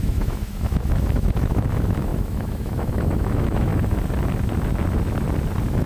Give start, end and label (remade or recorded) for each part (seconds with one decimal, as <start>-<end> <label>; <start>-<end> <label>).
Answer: 0.0-3.7 remade; 3.7-5.9 recorded